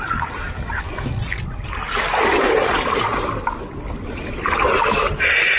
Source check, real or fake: real